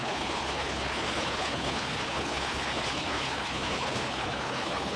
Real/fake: fake